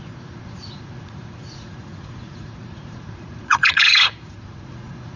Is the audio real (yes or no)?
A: no